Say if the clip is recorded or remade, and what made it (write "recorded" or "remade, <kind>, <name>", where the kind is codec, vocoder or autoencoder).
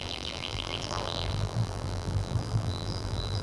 remade, vocoder, BigVGAN v2